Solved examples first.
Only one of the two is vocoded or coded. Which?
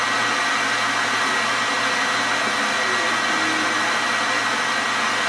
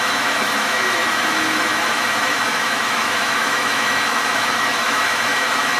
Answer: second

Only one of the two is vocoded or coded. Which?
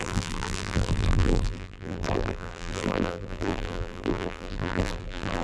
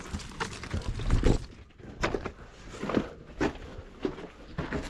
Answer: first